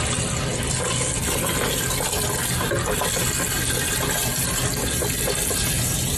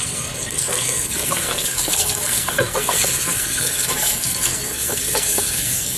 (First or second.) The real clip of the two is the first